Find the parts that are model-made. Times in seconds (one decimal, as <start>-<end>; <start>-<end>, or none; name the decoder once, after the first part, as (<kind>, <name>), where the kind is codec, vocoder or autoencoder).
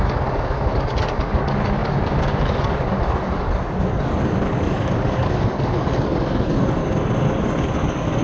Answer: 0.0-6.8 (codec, DAC); 7.4-8.2